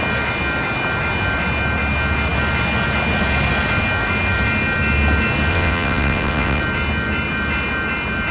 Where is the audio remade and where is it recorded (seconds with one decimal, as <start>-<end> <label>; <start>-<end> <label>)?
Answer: 0.0-5.5 recorded; 5.5-6.6 remade; 6.6-8.3 recorded